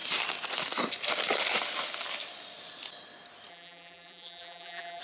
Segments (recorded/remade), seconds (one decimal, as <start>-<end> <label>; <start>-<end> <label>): 0.0-3.5 recorded; 3.5-5.0 remade